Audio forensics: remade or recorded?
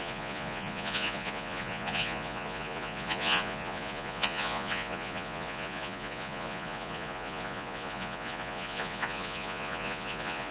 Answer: remade